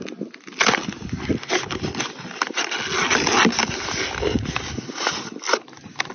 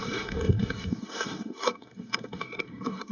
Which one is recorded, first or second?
first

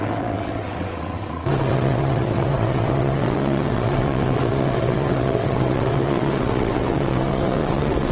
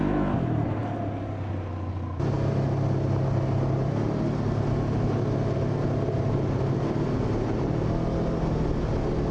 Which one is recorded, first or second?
second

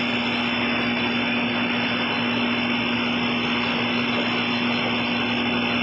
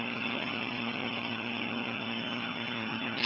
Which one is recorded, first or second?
first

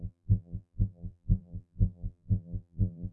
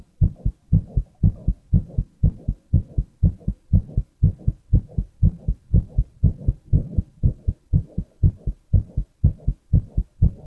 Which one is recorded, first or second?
second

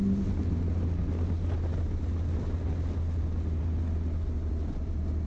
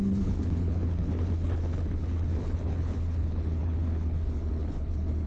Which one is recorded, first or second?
first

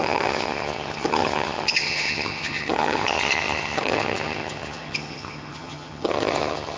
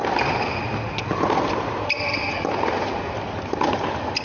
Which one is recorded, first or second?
second